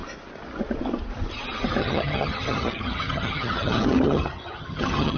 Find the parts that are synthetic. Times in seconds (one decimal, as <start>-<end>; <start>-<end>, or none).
1.8-5.2